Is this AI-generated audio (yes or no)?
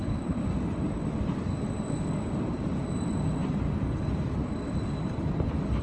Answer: no